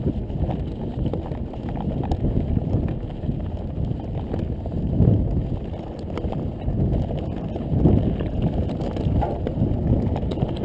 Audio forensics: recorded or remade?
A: recorded